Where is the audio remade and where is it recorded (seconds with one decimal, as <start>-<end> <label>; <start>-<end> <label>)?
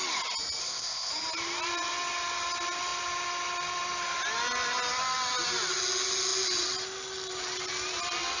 0.0-0.6 recorded; 0.6-1.1 remade; 1.1-8.4 recorded